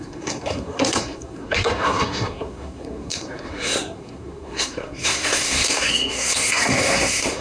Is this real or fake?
fake